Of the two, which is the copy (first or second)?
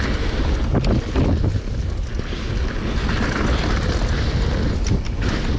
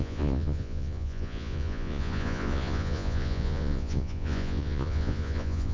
second